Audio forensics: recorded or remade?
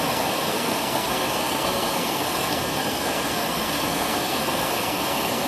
remade